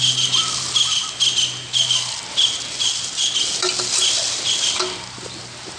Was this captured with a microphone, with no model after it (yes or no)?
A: yes